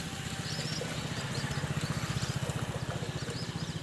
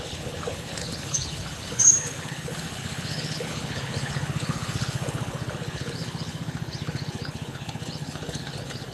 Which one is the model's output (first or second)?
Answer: second